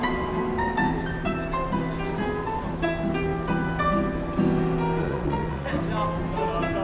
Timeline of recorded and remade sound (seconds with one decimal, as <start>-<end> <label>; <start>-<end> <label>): 0.0-5.0 recorded; 5.0-5.8 remade; 5.8-6.8 recorded